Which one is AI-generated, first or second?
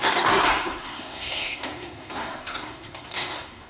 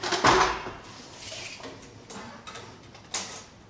first